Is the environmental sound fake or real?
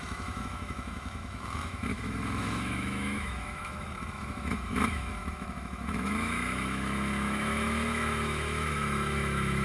fake